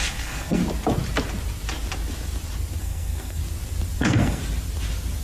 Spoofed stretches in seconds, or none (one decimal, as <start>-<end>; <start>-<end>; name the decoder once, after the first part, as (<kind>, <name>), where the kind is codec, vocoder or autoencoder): 0.0-0.6 (codec, SNAC); 2.8-3.4; 4.0-4.4